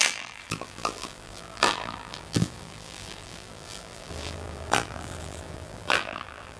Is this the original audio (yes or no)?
no